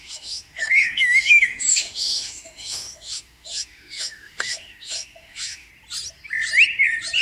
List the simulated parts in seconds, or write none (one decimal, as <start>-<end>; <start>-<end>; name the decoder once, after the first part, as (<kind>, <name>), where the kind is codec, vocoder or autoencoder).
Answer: 0.0-5.7 (autoencoder, DAC-VAE)